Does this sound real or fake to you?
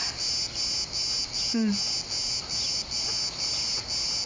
real